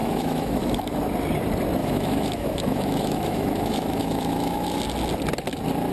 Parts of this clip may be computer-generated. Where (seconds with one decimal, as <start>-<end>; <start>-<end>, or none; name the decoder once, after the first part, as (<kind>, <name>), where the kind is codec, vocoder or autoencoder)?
0.0-1.0 (autoencoder, DAC-VAE); 1.8-4.8